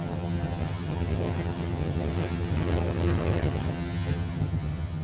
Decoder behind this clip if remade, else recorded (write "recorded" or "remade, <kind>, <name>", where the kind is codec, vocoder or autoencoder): remade, vocoder, HiFi-GAN